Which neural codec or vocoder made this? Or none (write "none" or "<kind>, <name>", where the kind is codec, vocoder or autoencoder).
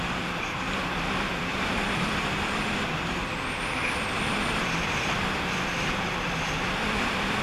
vocoder, BigVGAN v2